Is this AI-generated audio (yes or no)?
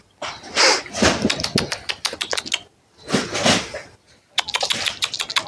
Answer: no